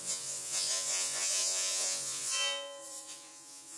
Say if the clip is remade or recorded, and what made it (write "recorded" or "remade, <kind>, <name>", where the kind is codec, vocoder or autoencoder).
remade, vocoder, Vocos